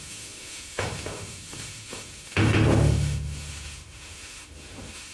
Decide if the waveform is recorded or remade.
remade